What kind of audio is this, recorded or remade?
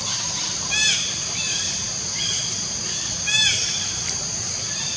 remade